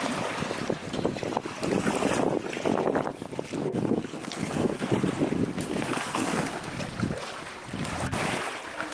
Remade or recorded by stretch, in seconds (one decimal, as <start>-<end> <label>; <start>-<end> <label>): 0.0-3.6 recorded; 3.6-4.9 remade; 4.9-5.7 recorded; 5.7-6.8 remade; 6.8-8.9 recorded